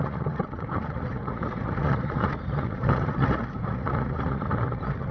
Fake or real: fake